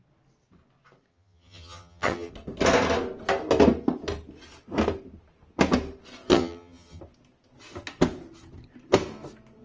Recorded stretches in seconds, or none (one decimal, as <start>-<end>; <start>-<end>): 0.0-1.1; 2.3-6.3; 7.0-9.6